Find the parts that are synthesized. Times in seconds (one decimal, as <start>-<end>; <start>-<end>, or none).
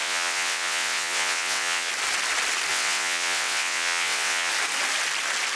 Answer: 0.0-1.9; 2.7-4.5